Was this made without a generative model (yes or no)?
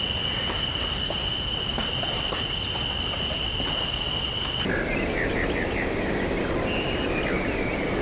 yes